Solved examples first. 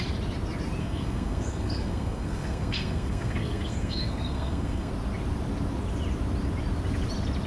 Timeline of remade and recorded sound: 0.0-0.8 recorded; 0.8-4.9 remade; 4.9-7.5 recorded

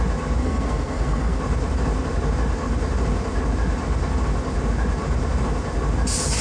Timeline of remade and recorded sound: 0.0-0.4 recorded; 0.4-1.4 remade; 1.4-6.4 recorded

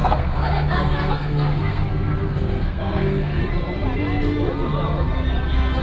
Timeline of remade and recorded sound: 0.0-3.4 remade; 3.4-5.8 recorded